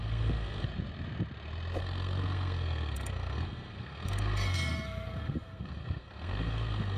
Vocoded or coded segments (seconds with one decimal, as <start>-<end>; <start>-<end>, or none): 0.0-0.7; 1.8-7.0